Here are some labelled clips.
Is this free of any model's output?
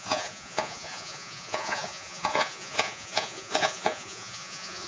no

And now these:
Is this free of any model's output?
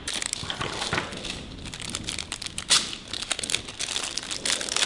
yes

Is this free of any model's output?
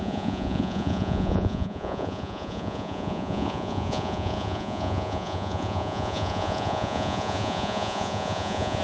no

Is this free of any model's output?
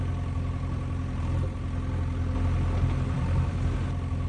yes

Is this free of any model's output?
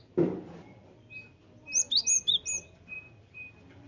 yes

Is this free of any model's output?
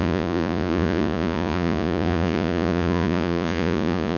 no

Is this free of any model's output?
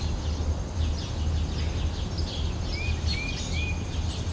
yes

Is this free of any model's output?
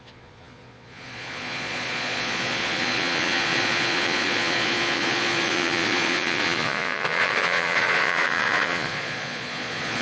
no